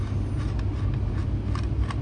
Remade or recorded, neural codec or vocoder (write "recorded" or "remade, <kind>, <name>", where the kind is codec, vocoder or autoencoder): recorded